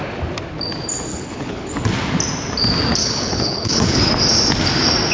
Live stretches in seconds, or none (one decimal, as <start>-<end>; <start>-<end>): 0.0-1.1; 1.7-3.0; 4.1-5.1